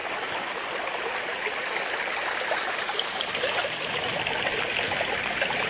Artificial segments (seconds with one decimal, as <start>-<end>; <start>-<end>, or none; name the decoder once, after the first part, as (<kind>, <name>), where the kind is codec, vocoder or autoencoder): none

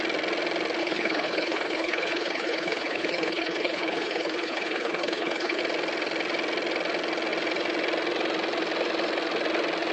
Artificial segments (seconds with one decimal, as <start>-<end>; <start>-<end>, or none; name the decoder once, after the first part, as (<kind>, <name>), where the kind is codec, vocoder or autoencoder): 0.8-5.6 (codec, HILCodec)